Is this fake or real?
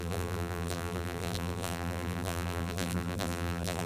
fake